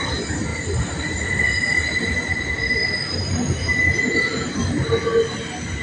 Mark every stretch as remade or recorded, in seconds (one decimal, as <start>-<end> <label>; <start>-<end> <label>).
0.0-0.5 recorded; 0.5-3.6 remade; 3.6-4.6 recorded; 4.6-5.1 remade; 5.1-5.8 recorded